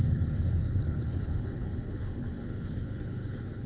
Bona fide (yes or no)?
no